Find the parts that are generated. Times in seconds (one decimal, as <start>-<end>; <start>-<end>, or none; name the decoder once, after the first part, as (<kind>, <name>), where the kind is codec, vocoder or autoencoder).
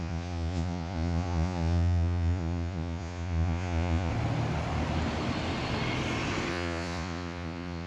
0.0-4.1 (vocoder, Vocos); 6.5-7.9